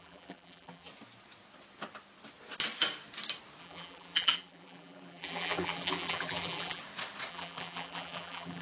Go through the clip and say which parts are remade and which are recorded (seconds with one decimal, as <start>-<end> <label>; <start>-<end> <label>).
0.0-0.9 remade; 0.9-3.6 recorded; 3.6-6.8 remade; 6.8-7.3 recorded; 7.3-8.6 remade